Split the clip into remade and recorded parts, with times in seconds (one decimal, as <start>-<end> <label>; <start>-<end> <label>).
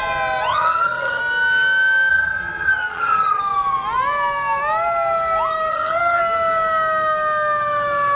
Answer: 0.0-0.5 recorded; 0.5-1.2 remade; 1.2-2.1 recorded; 2.1-3.4 remade; 3.4-5.7 recorded; 5.7-6.2 remade; 6.2-8.2 recorded